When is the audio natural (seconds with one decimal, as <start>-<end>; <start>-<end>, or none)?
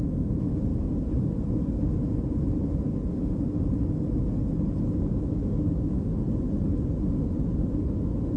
0.7-5.1; 6.1-8.4